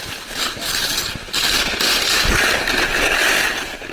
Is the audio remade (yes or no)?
no